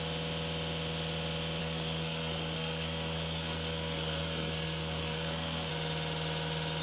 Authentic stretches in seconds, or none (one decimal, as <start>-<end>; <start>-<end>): 0.0-1.6; 5.7-6.8